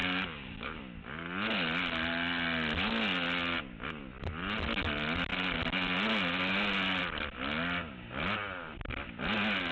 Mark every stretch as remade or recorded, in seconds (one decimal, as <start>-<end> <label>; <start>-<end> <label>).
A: 0.0-0.8 remade; 0.8-9.7 recorded